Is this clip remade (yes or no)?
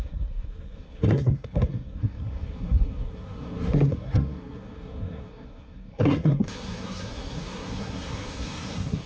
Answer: yes